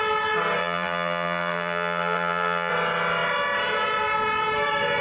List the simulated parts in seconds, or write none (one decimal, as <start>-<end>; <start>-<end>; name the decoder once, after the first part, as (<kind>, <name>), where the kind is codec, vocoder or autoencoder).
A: 0.6-2.7 (vocoder, BigVGAN v2)